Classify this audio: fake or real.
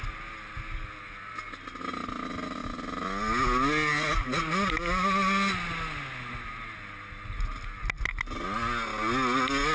real